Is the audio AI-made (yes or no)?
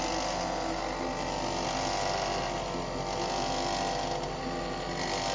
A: no